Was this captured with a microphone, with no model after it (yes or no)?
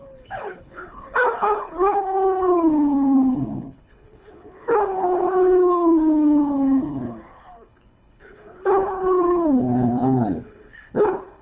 no